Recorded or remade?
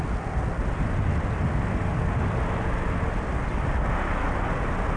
recorded